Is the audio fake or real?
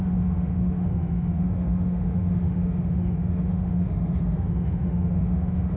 fake